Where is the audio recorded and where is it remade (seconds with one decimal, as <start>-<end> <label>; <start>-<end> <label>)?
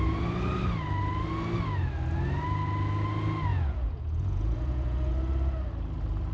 0.0-3.5 recorded; 3.5-5.1 remade; 5.1-6.3 recorded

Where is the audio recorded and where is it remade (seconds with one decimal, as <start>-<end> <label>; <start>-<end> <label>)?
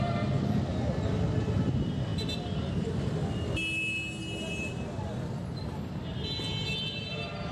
0.0-7.5 recorded